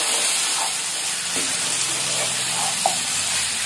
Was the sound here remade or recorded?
recorded